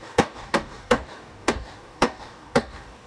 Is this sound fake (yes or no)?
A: yes